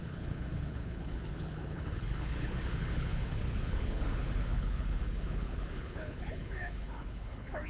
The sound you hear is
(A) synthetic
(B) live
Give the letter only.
A